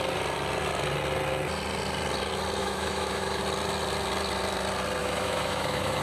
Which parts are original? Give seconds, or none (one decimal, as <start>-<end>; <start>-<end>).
0.0-2.6; 3.4-5.0